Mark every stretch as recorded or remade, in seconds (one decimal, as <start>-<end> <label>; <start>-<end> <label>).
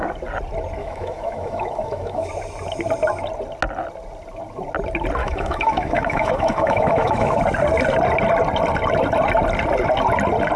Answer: 0.0-0.8 recorded; 0.8-2.3 remade; 2.3-5.2 recorded; 5.2-7.4 remade; 7.4-10.6 recorded